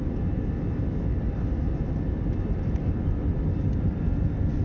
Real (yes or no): yes